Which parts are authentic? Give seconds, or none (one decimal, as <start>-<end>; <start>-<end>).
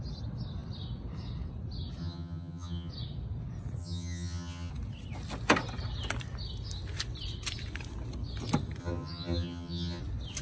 0.0-2.0; 2.9-3.8; 4.7-8.8; 10.0-10.4